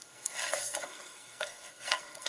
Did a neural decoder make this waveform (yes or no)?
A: yes